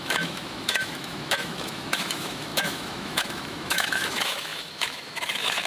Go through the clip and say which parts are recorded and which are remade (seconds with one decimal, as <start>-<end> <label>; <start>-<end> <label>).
0.0-5.7 remade